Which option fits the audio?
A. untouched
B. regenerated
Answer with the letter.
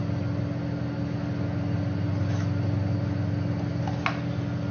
A